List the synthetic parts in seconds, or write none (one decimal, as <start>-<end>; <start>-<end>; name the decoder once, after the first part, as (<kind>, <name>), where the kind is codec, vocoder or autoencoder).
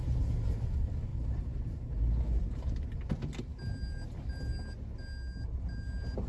none